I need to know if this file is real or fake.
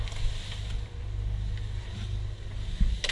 real